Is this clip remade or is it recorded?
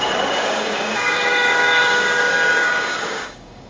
remade